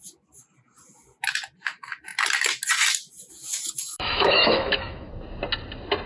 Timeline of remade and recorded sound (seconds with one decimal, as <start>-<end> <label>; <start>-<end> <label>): 0.0-3.8 recorded; 3.8-5.1 remade; 5.1-6.1 recorded